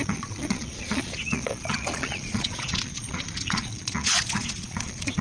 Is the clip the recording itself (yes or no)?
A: no